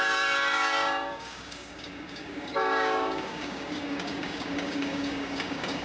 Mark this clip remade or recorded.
remade